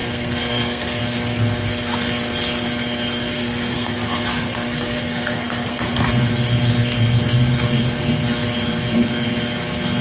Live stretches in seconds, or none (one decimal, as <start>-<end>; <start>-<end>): 1.0-3.3; 6.1-10.0